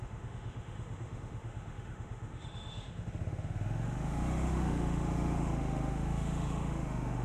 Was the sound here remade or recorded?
remade